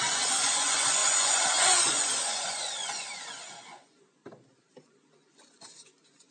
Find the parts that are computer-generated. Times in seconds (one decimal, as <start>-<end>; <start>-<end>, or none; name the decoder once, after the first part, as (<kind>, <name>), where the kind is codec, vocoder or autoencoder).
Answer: 0.0-4.2 (vocoder, Vocos); 4.8-6.3

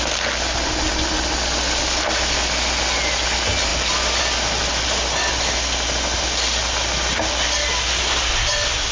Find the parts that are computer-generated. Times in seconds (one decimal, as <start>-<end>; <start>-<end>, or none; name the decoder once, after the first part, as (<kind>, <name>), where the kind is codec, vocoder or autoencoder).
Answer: none